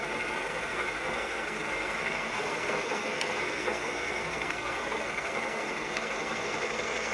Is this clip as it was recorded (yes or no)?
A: no